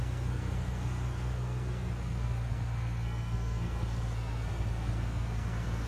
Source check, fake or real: fake